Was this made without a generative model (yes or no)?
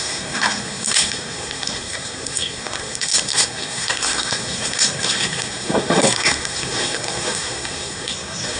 no